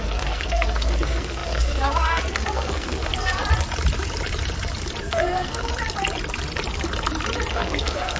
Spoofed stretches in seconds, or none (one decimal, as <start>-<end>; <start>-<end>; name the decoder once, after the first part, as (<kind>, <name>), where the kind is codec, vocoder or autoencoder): 0.0-3.4 (codec, SNAC); 5.0-5.7; 7.5-8.2